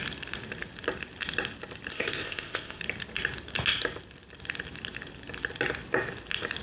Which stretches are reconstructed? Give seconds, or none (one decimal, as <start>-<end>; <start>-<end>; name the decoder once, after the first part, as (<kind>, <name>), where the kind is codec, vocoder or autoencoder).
1.9-2.8 (codec, ZipCodec)